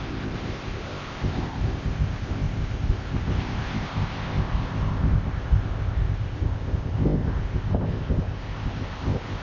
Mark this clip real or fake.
fake